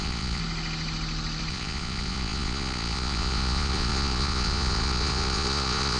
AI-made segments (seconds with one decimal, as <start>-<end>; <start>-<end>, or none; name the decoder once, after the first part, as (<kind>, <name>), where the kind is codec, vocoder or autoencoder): 0.0-0.4 (vocoder, Vocos); 1.5-6.0